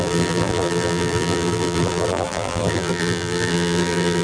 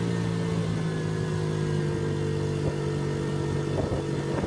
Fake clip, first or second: first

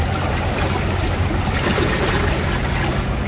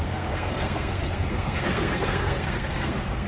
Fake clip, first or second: second